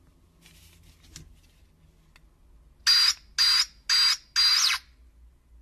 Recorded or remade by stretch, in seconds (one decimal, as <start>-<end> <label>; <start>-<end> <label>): 0.0-5.6 recorded